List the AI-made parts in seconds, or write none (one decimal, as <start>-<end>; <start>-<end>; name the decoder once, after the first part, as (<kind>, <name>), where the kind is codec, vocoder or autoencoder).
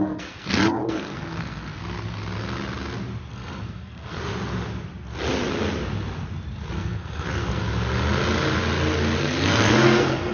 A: 0.0-1.8 (codec, SNAC); 3.3-4.2; 6.7-7.6; 9.2-10.3